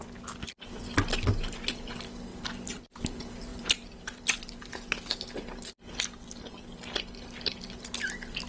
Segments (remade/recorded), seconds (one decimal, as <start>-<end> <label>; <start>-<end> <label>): 0.0-1.4 recorded; 1.4-1.9 remade; 1.9-2.3 recorded; 2.3-3.0 remade; 3.0-3.5 recorded; 3.5-4.2 remade; 4.2-8.5 recorded